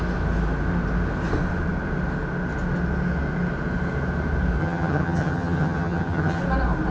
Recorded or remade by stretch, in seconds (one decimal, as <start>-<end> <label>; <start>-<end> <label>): 0.0-4.6 recorded; 4.6-6.4 remade; 6.4-6.9 recorded